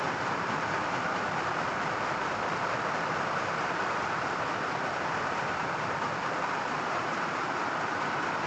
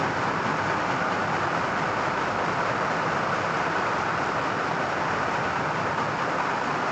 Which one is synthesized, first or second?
first